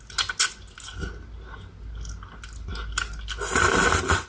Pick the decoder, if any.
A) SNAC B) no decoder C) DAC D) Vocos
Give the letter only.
B